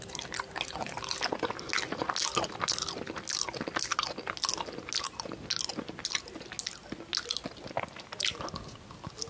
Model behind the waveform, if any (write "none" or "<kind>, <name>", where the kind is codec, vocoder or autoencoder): none